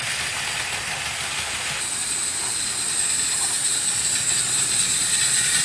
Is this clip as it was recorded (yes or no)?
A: yes